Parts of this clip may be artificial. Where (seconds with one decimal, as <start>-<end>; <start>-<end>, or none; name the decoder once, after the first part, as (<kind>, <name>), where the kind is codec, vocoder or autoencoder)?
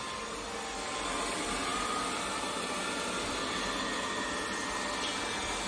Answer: none